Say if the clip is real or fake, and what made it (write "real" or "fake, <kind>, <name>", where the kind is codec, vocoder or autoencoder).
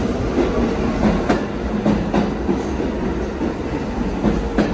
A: real